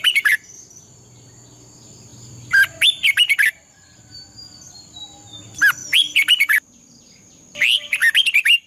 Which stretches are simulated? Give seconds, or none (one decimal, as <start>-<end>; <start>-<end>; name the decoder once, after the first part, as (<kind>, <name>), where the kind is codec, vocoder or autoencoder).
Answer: 2.1-4.8 (vocoder, BigVGAN v2); 5.8-7.0; 8.0-8.7